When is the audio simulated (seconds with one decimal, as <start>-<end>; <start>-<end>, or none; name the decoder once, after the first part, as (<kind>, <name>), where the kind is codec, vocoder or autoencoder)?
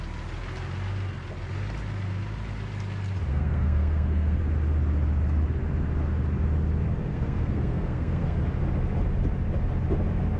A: 3.3-4.4 (codec, SNAC); 7.1-8.4